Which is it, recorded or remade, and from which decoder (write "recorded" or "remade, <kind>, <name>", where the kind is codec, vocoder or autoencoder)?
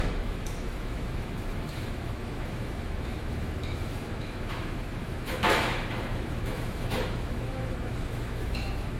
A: remade, autoencoder, DAC-VAE